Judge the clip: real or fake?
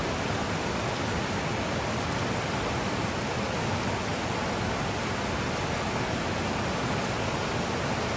real